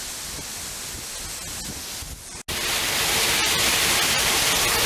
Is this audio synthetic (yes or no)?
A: no